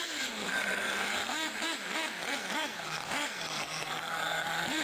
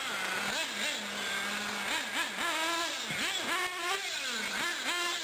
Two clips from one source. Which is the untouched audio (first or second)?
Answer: second